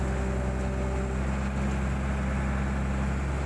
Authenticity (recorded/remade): recorded